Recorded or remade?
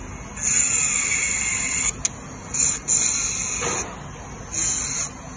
recorded